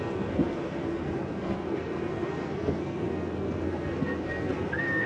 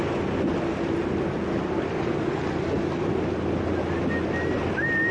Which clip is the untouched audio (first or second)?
second